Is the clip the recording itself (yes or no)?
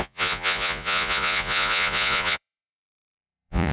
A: no